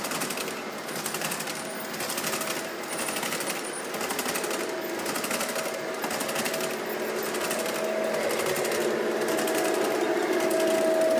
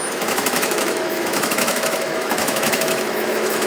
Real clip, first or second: first